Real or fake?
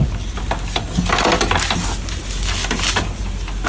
real